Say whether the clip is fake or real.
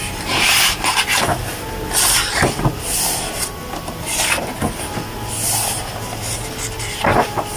real